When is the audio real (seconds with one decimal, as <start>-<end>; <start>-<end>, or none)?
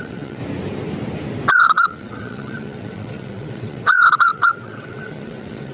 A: 0.4-1.5